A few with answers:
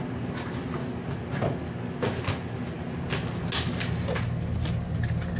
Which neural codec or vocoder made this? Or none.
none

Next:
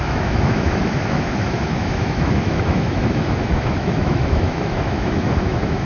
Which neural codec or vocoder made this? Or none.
autoencoder, DAC-VAE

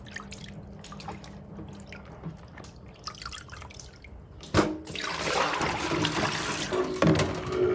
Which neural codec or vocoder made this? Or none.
none